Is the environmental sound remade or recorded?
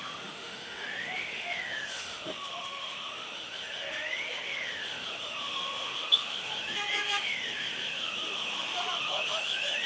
remade